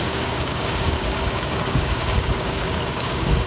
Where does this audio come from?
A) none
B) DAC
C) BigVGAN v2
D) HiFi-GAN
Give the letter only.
B